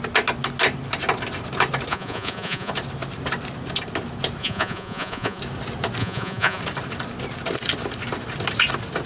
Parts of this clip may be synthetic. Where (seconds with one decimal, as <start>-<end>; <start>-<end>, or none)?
1.9-2.7; 4.4-5.4; 6.0-6.6